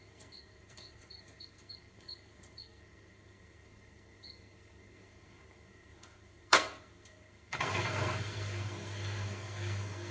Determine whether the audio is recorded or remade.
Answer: remade